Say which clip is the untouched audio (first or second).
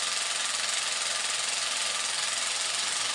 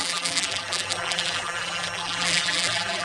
first